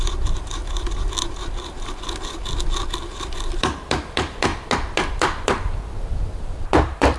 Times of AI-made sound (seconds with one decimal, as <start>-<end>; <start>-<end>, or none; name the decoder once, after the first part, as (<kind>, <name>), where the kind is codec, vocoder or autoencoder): 0.0-0.6 (vocoder, BigVGAN v2); 3.1-4.5; 5.1-7.2

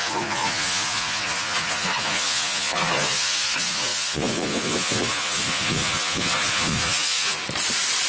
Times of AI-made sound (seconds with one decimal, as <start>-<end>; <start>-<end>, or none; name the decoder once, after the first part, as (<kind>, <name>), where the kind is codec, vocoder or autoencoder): 0.0-7.4 (vocoder, Vocos)

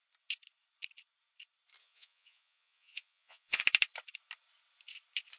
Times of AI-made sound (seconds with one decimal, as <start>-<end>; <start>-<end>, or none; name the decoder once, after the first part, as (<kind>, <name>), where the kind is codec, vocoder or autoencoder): 1.8-3.6 (vocoder, Vocos)

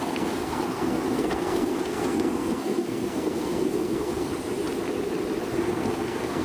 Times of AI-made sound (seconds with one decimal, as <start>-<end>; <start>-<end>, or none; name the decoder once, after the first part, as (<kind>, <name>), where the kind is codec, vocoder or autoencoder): 0.0-4.3 (codec, SNAC); 5.5-6.4

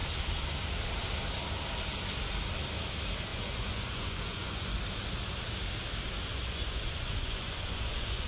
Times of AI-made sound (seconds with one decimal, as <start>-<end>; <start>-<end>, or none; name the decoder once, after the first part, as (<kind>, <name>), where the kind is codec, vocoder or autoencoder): 3.3-4.8 (vocoder, Vocos); 6.3-8.3

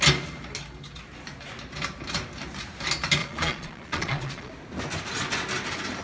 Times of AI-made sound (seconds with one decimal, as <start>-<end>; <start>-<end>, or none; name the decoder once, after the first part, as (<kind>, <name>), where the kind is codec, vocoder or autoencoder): 3.2-4.5 (vocoder, Vocos)

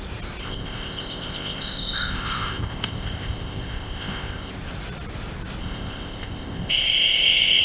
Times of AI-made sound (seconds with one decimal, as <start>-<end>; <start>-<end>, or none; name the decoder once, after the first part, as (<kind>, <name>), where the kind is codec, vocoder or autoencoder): 0.4-4.5 (codec, ZipCodec); 5.6-7.6

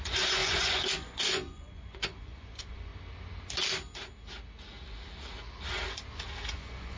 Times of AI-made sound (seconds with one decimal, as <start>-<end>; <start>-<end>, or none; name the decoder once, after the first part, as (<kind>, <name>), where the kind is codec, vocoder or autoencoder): 0.0-2.9 (vocoder, Vocos); 6.5-7.0